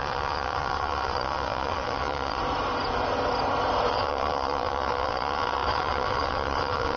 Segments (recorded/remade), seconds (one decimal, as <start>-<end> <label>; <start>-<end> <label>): 0.0-2.4 remade; 2.4-3.9 recorded; 3.9-7.0 remade